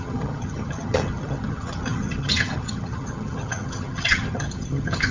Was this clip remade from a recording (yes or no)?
yes